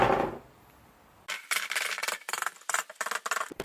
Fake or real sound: real